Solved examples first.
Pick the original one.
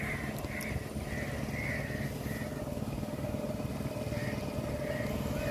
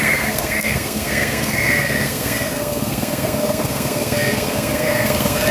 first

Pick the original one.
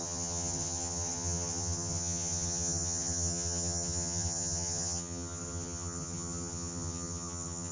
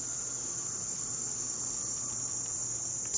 second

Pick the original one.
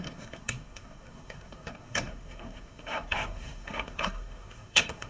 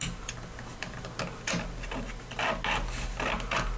second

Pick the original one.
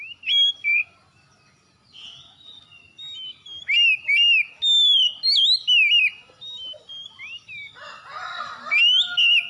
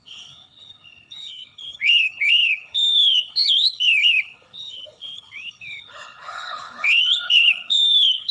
first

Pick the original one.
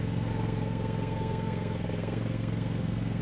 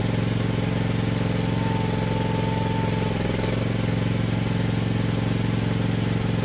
second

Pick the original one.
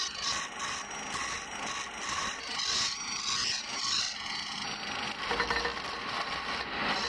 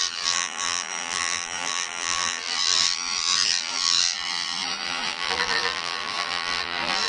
first